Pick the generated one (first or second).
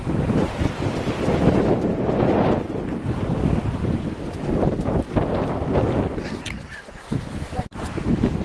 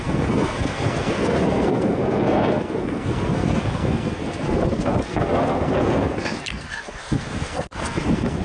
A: second